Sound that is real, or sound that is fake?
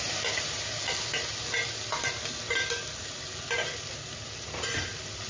real